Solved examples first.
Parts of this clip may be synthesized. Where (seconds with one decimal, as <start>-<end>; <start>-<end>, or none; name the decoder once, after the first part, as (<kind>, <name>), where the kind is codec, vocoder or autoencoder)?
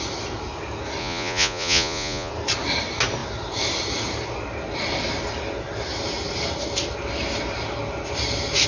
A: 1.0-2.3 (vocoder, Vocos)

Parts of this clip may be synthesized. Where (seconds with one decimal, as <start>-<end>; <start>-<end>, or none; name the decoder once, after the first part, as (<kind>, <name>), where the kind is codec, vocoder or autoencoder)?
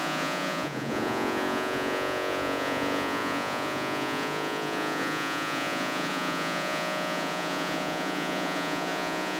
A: 0.0-9.4 (vocoder, Vocos)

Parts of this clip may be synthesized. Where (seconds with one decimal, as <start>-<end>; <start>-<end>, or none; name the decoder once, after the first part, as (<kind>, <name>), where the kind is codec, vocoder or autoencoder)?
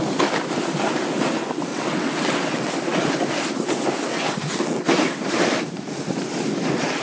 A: 1.7-2.7 (vocoder, WaveNeXt); 4.1-4.8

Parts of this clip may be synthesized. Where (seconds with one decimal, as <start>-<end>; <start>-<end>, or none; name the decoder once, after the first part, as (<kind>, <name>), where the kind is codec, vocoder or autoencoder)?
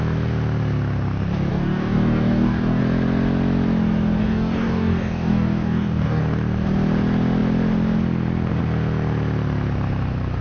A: 1.5-2.8 (codec, DAC); 4.2-6.2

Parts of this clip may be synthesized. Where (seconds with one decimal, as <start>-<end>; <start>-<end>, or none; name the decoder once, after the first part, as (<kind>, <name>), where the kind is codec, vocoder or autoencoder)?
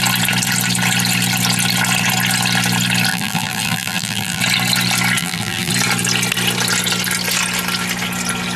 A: 3.1-4.4 (vocoder, BigVGAN v2); 5.2-5.7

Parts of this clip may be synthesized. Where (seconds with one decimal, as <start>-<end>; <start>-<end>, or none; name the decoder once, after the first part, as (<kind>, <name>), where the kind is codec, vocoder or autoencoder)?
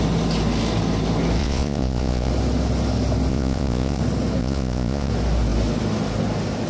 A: 1.4-2.3 (vocoder, Vocos); 3.3-4.0; 4.4-5.1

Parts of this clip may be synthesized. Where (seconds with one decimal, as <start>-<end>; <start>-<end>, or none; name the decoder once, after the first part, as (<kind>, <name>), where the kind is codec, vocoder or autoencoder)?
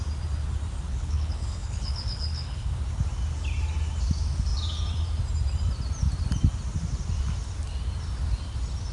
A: 0.9-2.7 (codec, HILCodec)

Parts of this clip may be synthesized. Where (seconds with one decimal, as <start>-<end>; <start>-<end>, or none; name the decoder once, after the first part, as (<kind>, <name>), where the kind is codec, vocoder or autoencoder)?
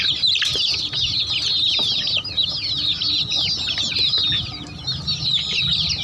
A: none